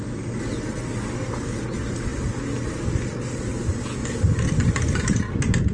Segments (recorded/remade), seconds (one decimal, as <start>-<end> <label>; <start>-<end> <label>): 0.0-5.7 recorded